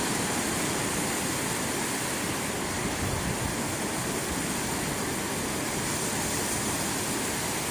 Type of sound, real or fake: real